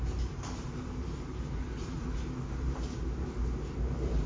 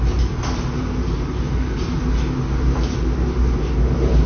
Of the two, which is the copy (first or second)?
first